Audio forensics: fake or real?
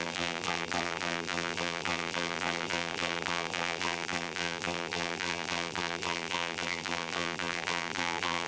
fake